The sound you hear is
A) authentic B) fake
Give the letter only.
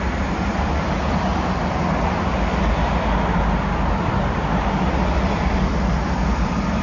B